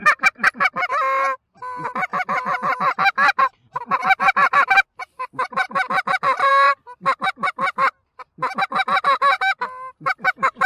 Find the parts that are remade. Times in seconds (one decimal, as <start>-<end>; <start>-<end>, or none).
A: 6.5-7.3